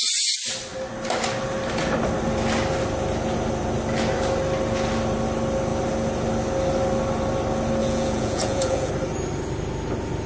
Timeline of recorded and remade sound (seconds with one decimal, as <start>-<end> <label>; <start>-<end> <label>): 0.0-7.8 recorded; 7.8-8.9 remade; 8.9-10.3 recorded